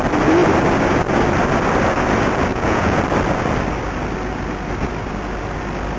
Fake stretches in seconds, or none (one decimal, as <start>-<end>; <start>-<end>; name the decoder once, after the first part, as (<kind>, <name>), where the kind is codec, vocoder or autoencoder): 2.5-3.0 (vocoder, Vocos)